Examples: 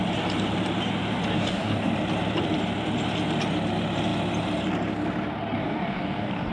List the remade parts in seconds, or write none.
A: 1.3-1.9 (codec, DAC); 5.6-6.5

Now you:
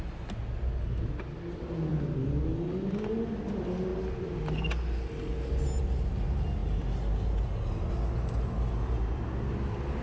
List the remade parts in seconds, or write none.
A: none

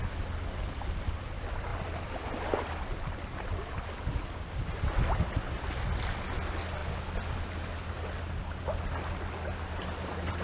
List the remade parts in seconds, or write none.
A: none

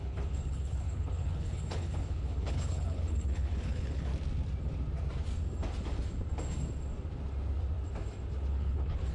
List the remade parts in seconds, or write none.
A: 0.0-4.1 (codec, HILCodec); 8.5-9.1

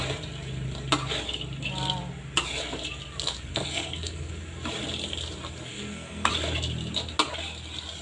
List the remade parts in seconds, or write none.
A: 3.5-4.3 (codec, SNAC); 5.7-6.3

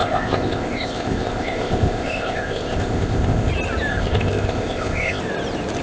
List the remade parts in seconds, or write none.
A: 0.0-3.5 (codec, ZipCodec); 3.9-5.2

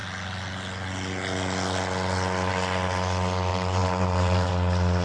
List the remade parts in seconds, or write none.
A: 3.5-4.5 (vocoder, BigVGAN v2)